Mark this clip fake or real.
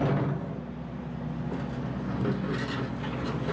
real